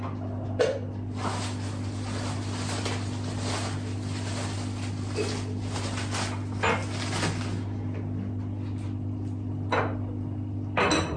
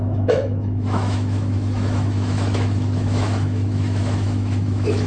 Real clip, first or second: first